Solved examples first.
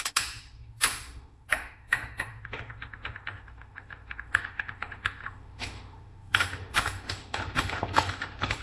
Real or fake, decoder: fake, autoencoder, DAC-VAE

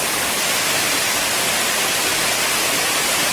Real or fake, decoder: real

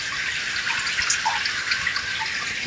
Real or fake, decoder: real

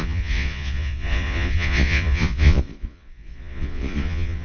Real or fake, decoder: fake, vocoder, Vocos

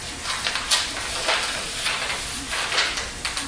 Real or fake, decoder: real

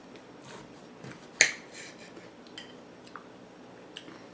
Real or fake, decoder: real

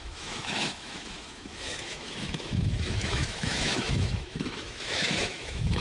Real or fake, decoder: fake, autoencoder, DAC-VAE